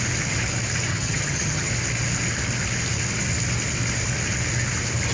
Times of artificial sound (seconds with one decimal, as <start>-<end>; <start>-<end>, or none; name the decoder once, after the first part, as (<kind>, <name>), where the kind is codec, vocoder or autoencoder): 0.9-1.7 (vocoder, HiFi-GAN)